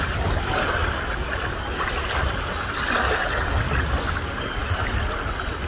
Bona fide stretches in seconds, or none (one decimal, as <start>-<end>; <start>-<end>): 0.0-5.7